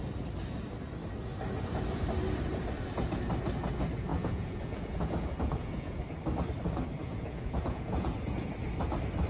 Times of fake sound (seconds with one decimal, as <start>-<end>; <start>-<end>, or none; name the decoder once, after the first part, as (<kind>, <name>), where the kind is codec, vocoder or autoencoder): 4.1-6.0 (vocoder, Vocos); 7.0-8.5